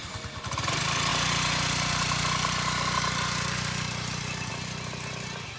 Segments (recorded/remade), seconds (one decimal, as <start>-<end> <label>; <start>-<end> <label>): 0.0-5.6 remade